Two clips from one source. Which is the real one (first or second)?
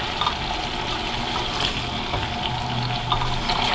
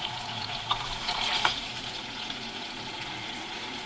first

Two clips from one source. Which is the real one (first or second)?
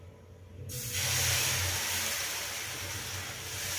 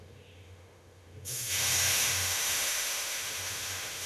first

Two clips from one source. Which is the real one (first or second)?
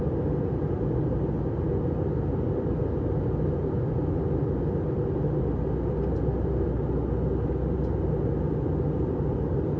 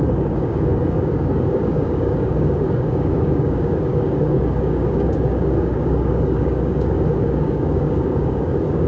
first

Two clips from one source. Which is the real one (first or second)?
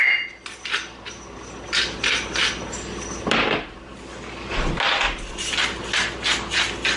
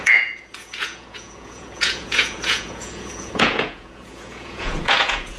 first